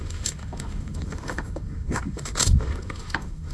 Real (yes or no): no